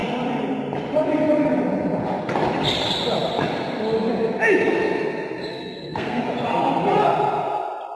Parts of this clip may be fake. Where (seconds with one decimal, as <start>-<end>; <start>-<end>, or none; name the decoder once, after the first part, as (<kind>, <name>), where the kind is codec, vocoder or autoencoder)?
5.5-6.2 (codec, SNAC)